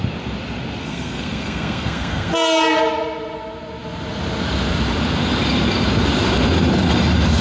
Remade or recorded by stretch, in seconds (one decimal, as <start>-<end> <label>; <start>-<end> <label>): 0.0-0.8 recorded; 0.8-2.3 remade; 2.3-7.4 recorded